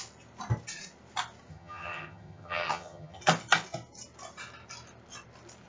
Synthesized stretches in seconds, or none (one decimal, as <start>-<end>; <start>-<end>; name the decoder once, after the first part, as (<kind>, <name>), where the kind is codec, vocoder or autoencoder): 1.5-3.2 (vocoder, HiFi-GAN)

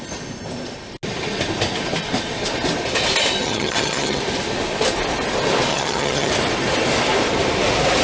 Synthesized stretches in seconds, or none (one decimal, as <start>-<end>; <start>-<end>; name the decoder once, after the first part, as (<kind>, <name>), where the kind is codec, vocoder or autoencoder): 3.4-4.2 (vocoder, HiFi-GAN); 5.7-6.3

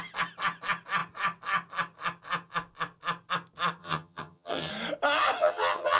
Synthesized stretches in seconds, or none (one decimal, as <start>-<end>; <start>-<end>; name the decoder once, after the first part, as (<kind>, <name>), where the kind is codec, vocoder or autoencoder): 3.8-4.7 (vocoder, HiFi-GAN); 5.4-6.0

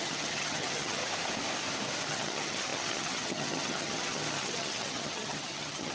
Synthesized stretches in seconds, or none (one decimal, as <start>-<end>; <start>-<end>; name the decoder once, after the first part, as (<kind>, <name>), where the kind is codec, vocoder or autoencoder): 0.0-1.0 (vocoder, HiFi-GAN); 2.1-5.9

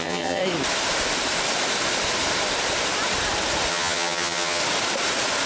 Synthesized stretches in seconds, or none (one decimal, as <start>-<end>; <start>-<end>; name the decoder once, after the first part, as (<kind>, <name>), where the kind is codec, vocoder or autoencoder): 0.0-0.4 (vocoder, HiFi-GAN); 3.7-4.6